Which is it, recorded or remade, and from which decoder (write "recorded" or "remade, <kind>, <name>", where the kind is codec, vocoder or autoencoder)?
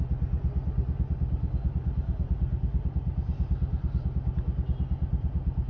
recorded